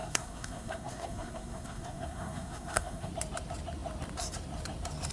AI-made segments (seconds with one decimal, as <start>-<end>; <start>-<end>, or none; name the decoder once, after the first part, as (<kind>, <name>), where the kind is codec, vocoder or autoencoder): 0.0-3.1 (codec, SNAC)